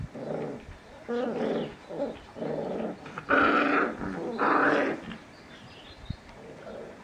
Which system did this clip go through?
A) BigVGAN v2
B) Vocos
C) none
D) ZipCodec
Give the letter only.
C